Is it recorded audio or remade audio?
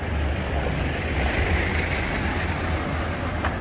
recorded